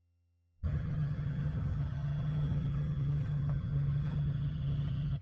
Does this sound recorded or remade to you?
remade